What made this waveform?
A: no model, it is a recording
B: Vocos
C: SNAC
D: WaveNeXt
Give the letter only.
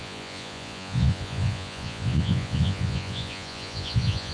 B